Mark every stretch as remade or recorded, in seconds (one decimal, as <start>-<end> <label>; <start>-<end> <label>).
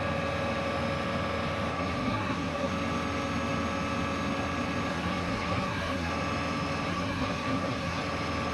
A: 0.0-1.7 recorded; 1.7-2.7 remade; 2.7-4.9 recorded; 4.9-6.1 remade; 6.1-6.9 recorded; 6.9-8.0 remade; 8.0-8.5 recorded